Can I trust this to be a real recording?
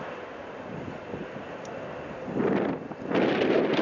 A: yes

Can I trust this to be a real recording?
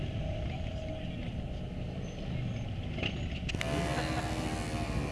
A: yes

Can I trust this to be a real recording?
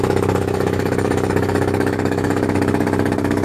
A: no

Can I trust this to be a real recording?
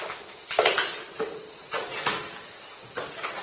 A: yes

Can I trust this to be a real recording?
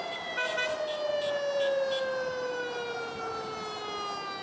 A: yes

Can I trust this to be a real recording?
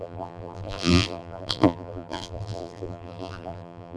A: no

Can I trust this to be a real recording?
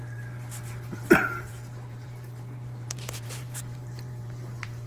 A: no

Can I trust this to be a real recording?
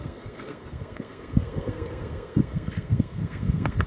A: no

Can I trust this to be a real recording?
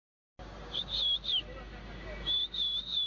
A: yes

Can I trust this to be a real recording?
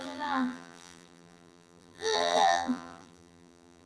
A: no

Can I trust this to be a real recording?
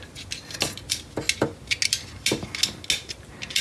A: yes